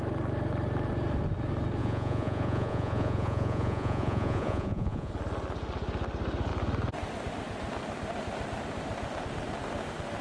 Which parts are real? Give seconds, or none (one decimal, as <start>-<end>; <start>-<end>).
0.0-1.8; 5.1-10.2